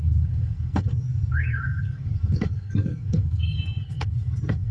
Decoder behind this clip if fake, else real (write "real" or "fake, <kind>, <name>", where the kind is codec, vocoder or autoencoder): fake, codec, SNAC